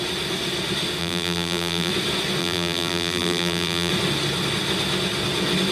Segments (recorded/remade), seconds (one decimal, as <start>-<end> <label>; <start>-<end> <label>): 0.0-1.0 recorded; 1.0-1.9 remade; 1.9-2.4 recorded; 2.4-3.9 remade; 3.9-5.7 recorded